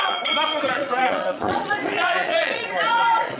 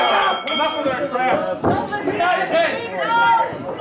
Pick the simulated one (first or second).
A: first